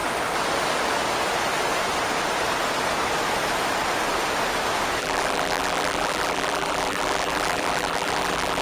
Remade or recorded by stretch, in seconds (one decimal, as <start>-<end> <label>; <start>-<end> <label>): 0.0-5.0 recorded; 5.0-8.6 remade